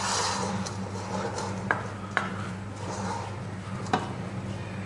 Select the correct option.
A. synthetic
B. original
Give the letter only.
B